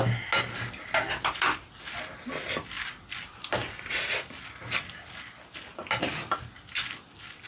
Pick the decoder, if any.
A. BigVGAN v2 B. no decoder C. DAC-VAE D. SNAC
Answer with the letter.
B